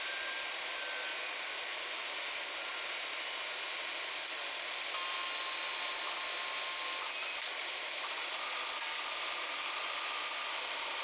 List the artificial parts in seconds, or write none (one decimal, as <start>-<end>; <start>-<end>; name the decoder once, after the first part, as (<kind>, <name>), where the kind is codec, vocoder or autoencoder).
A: none